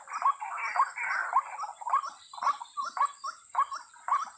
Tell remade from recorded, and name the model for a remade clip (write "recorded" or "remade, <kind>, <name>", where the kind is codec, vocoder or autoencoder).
recorded